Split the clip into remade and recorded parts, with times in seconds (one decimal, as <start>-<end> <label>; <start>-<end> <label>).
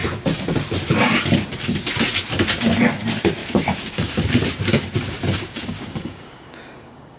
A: 0.0-3.4 recorded; 3.4-7.2 remade